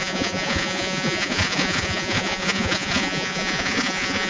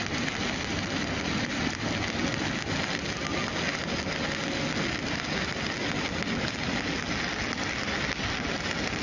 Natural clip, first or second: second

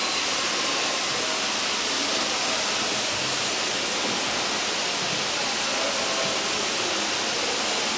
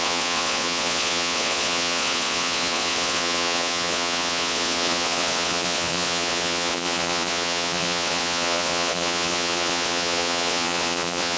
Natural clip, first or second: first